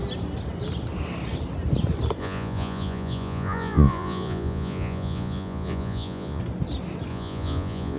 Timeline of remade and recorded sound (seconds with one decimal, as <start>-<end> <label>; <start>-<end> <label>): 0.0-2.2 recorded; 2.2-6.4 remade; 6.4-7.1 recorded; 7.1-8.0 remade